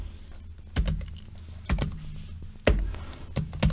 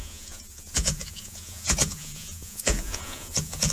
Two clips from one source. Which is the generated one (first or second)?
second